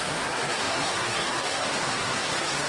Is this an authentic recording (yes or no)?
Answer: no